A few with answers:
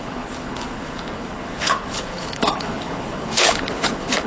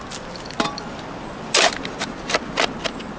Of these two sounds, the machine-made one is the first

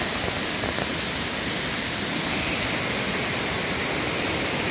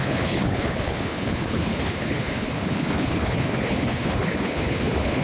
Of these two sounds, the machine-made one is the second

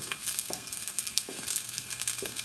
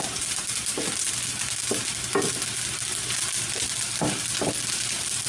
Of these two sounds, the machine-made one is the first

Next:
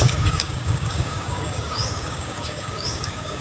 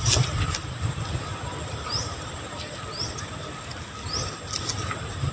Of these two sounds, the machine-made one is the first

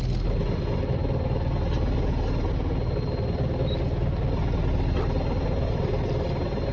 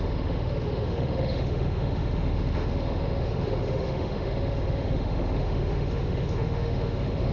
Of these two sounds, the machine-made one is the second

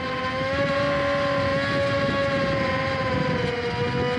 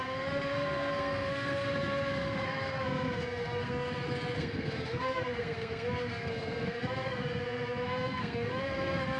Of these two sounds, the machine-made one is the second